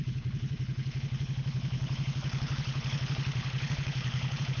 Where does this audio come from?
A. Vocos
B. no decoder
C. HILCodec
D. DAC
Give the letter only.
C